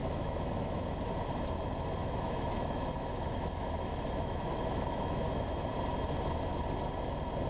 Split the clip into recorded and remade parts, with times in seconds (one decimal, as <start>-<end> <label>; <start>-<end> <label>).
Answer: 0.0-0.8 remade; 0.8-2.0 recorded; 2.0-5.7 remade; 5.7-7.5 recorded